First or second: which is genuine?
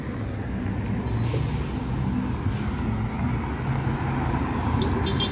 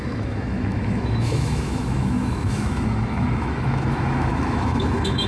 first